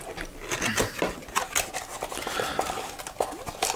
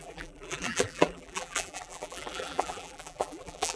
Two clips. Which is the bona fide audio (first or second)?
first